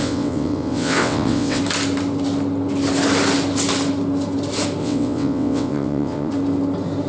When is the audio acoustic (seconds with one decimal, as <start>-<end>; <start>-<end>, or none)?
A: 1.6-4.8; 6.3-7.1